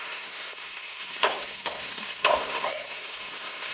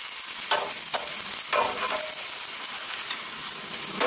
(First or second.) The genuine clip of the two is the second